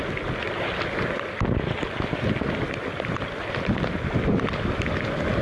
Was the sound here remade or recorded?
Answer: recorded